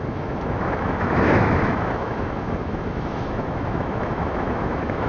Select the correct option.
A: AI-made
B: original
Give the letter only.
A